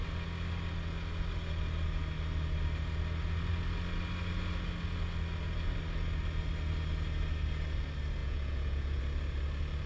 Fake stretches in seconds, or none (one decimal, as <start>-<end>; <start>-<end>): 8.2-9.0